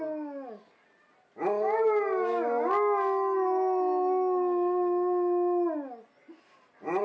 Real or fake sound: real